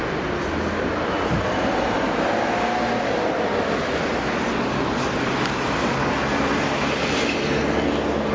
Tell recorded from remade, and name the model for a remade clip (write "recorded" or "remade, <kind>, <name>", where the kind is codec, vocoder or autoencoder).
recorded